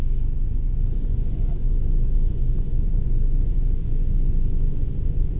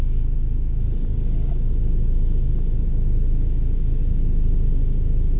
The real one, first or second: second